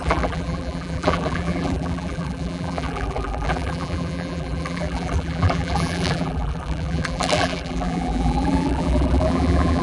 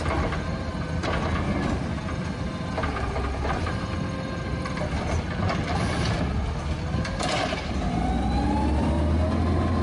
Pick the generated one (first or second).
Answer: first